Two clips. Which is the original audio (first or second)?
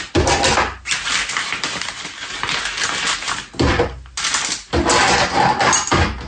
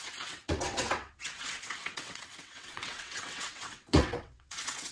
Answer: first